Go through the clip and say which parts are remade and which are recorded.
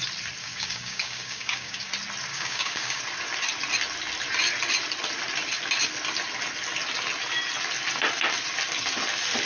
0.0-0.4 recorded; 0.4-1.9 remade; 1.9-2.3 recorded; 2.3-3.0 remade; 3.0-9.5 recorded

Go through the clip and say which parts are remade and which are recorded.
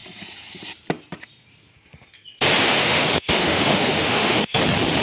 0.0-2.8 recorded; 2.8-4.6 remade; 4.6-5.0 recorded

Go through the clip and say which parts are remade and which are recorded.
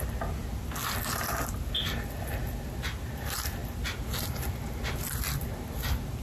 0.0-6.2 recorded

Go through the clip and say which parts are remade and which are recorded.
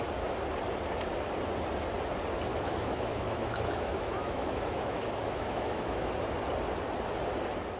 0.0-2.5 recorded; 2.5-6.1 remade; 6.1-7.8 recorded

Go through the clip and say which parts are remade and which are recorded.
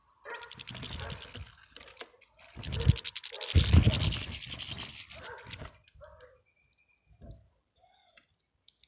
0.0-8.9 recorded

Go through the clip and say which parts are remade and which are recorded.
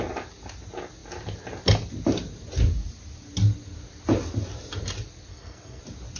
0.0-5.3 recorded; 5.3-5.8 remade; 5.8-6.2 recorded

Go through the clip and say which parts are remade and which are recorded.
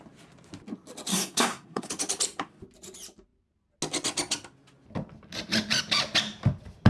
0.0-1.1 recorded; 1.1-1.9 remade; 1.9-6.9 recorded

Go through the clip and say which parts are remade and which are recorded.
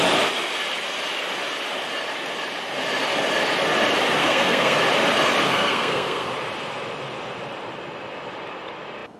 0.0-4.2 recorded; 4.2-4.8 remade; 4.8-5.5 recorded; 5.5-6.3 remade; 6.3-9.2 recorded